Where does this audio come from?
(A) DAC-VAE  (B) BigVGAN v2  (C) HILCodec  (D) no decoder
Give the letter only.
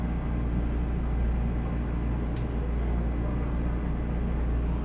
D